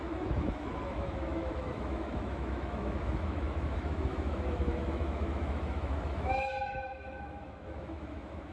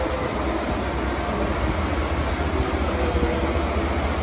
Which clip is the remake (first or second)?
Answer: first